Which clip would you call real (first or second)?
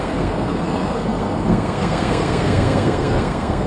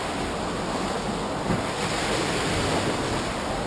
second